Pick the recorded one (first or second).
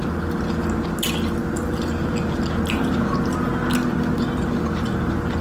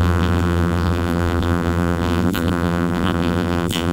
first